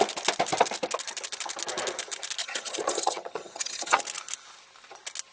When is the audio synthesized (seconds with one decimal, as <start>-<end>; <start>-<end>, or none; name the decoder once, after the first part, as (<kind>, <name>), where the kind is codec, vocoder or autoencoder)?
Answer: 2.4-4.0 (vocoder, HiFi-GAN)